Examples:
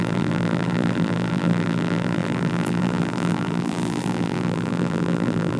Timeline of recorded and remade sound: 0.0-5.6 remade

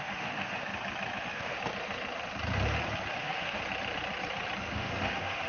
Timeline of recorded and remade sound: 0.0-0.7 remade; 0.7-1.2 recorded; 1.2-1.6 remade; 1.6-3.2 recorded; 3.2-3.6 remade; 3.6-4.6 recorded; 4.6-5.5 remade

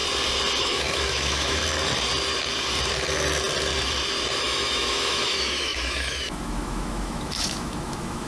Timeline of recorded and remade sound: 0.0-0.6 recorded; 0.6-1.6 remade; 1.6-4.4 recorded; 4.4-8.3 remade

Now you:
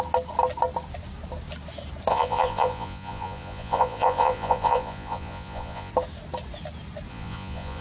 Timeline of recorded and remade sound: 0.0-2.1 recorded; 2.1-5.9 remade; 5.9-7.1 recorded; 7.1-7.8 remade